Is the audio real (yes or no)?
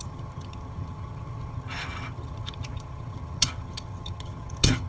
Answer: no